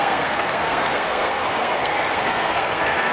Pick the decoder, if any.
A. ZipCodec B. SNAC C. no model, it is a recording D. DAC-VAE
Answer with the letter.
B